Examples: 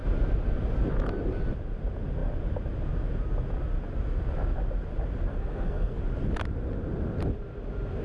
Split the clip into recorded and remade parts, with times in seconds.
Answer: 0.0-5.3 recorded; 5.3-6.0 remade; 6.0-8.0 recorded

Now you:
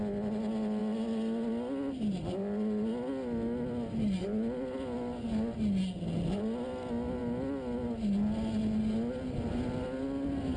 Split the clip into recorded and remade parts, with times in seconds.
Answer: 0.0-10.6 recorded

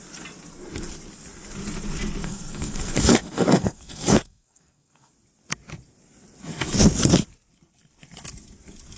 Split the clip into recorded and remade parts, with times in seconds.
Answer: 0.0-2.2 recorded; 2.2-5.1 remade; 5.1-9.0 recorded

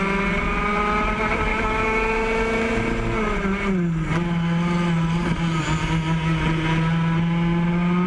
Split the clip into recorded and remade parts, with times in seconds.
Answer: 0.0-1.5 recorded; 1.5-2.7 remade; 2.7-8.1 recorded

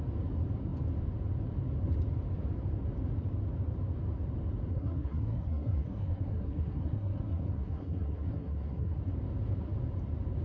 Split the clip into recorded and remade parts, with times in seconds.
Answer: 0.0-4.7 recorded; 4.7-9.0 remade; 9.0-10.4 recorded

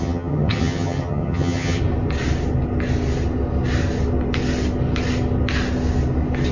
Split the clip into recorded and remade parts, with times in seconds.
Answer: 0.0-1.8 remade; 1.8-6.5 recorded

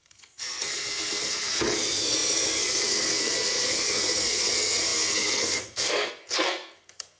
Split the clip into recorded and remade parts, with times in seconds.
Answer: 0.0-7.2 remade